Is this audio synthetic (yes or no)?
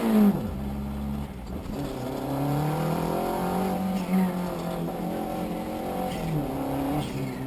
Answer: no